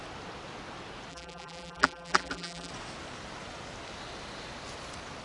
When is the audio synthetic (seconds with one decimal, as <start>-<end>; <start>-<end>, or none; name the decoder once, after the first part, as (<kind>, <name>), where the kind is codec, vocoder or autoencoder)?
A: 1.1-2.7 (vocoder, BigVGAN v2)